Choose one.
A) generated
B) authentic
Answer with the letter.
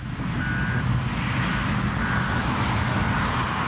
B